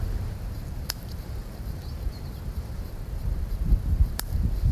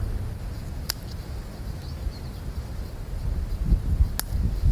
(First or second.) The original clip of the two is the second